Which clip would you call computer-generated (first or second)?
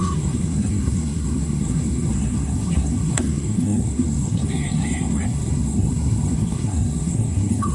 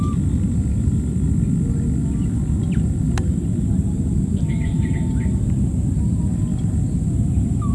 first